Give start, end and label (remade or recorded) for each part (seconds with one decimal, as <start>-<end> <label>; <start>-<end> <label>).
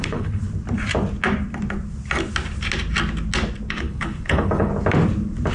0.0-0.4 remade; 0.4-3.7 recorded; 3.7-4.7 remade; 4.7-5.5 recorded